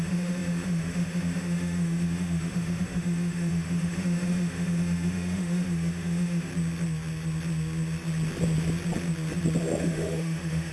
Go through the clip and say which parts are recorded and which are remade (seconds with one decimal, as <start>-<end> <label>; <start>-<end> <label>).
0.0-6.5 remade; 6.5-9.8 recorded; 9.8-10.7 remade